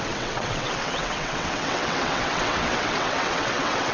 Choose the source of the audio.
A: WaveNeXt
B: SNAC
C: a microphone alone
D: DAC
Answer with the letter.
A